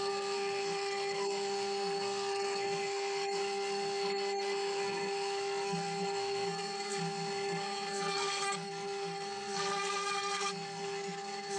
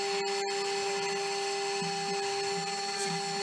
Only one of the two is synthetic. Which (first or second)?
first